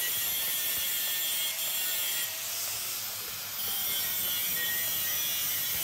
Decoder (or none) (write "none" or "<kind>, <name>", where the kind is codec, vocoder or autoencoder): none